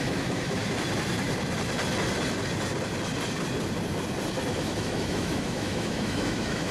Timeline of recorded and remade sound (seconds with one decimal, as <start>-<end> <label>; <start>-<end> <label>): 0.0-0.6 remade; 0.6-4.6 recorded; 4.6-6.7 remade